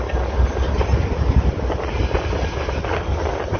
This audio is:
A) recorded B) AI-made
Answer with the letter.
A